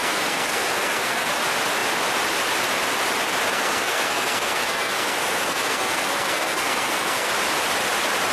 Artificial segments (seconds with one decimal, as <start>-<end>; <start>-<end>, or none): 0.0-1.3; 3.5-7.3